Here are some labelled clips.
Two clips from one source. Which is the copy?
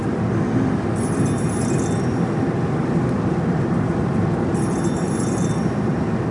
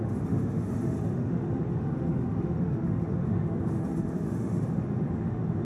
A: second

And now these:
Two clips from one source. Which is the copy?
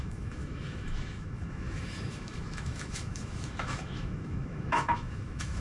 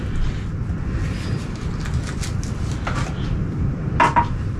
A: first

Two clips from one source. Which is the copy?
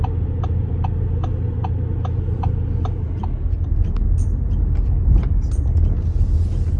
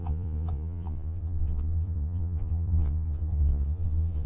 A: second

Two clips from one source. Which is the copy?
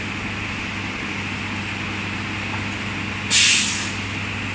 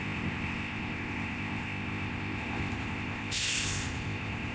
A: second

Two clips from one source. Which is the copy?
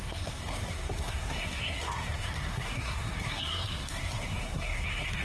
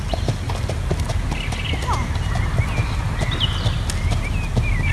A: first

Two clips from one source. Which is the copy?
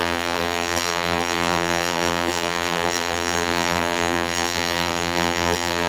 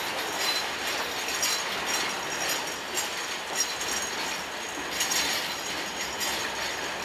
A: first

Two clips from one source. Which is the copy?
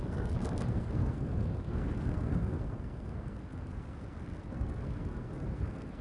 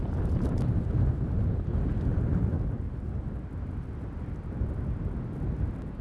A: first